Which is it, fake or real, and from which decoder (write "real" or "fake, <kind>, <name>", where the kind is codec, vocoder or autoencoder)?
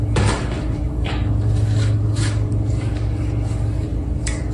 fake, codec, DAC